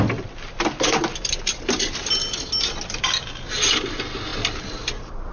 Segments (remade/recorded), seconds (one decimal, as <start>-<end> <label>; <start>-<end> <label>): 0.0-5.3 recorded

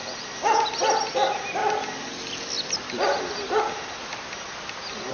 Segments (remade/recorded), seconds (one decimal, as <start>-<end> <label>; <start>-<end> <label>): 0.0-5.1 recorded

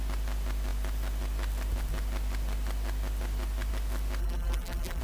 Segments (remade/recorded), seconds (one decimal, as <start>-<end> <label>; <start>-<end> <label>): 0.0-4.2 recorded; 4.2-5.0 remade

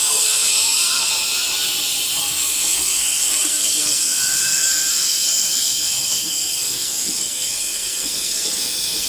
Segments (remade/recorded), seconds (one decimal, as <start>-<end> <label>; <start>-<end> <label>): 0.0-1.1 remade; 1.1-2.2 recorded; 2.2-9.1 remade

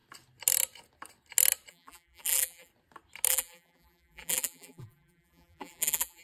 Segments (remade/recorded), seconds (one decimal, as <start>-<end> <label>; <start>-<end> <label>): 0.0-1.7 recorded; 1.7-2.7 remade; 2.7-3.3 recorded; 3.3-6.2 remade

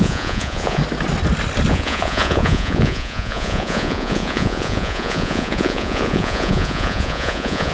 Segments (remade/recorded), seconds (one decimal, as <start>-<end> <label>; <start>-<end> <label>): 0.0-0.8 remade; 0.8-1.7 recorded; 1.7-7.7 remade

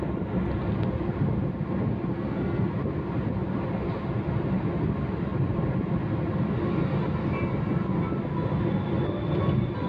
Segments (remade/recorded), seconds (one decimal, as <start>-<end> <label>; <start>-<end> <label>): 0.0-2.1 recorded; 2.1-2.7 remade; 2.7-9.9 recorded